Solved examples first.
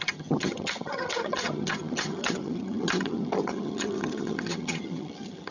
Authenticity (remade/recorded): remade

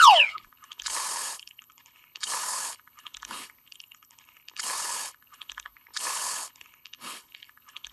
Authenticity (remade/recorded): remade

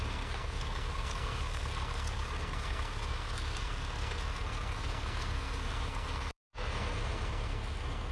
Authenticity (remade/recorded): remade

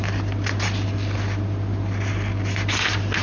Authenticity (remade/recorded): recorded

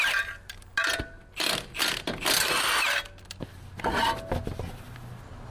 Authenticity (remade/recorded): recorded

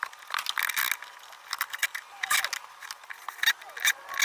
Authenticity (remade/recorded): recorded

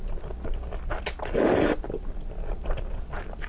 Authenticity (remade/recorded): recorded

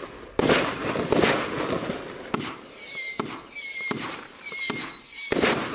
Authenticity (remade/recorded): recorded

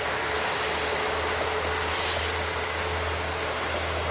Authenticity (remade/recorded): recorded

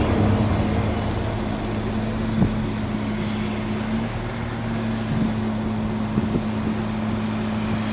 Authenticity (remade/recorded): recorded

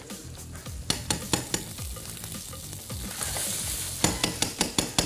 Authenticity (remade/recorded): recorded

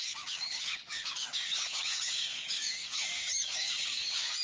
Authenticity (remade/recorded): remade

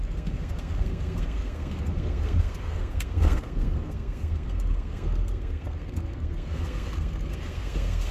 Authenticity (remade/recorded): remade